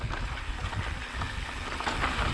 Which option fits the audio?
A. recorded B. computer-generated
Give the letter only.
A